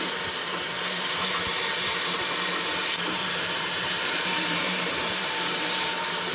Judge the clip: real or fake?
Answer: fake